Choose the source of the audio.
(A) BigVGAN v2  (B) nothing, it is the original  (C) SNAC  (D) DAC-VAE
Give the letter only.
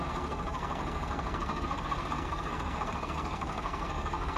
C